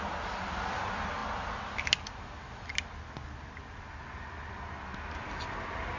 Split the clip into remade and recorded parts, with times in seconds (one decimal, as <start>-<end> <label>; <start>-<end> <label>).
0.0-6.0 recorded